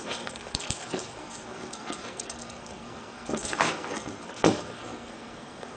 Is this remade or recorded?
remade